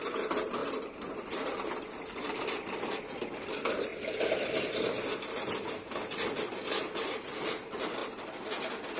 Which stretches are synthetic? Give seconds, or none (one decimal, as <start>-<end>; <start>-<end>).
0.6-1.4